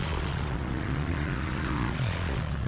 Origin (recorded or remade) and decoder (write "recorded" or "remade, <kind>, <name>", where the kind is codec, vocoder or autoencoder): remade, vocoder, Vocos